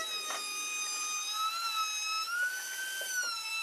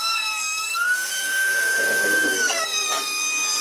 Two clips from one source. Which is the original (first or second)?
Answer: first